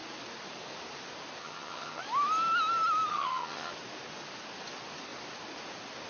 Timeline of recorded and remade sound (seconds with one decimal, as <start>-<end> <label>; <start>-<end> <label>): 0.0-1.4 recorded; 1.4-2.0 remade; 2.0-3.1 recorded; 3.1-3.7 remade; 3.7-6.1 recorded